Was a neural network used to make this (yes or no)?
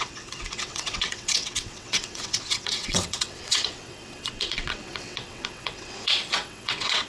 yes